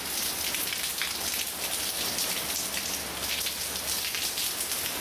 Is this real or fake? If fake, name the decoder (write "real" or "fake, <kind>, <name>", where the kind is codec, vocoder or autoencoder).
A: real